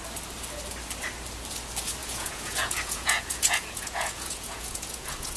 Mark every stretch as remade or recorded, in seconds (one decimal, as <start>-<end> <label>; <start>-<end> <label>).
0.0-2.0 recorded; 2.0-5.4 remade